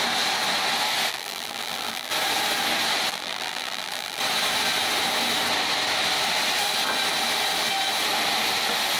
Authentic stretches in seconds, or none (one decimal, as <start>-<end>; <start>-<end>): 0.0-1.1; 2.1-3.1; 4.2-9.0